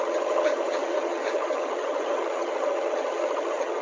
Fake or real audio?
fake